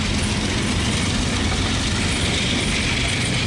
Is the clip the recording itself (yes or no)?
yes